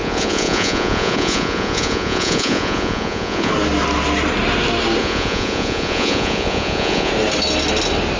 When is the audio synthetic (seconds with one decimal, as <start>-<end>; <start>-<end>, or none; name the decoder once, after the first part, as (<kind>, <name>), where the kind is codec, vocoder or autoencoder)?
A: 0.0-3.5 (vocoder, Vocos); 5.0-7.1